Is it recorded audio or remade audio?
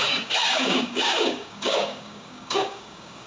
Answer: remade